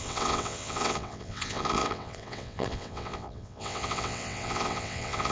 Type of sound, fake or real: fake